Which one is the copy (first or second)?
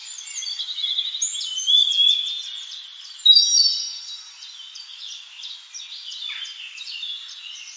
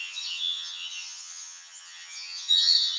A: second